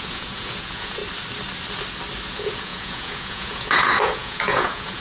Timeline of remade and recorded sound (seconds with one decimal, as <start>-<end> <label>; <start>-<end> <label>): 0.0-1.0 remade; 1.0-2.3 recorded; 2.3-5.0 remade